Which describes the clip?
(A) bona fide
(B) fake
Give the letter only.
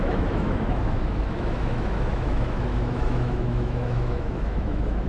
B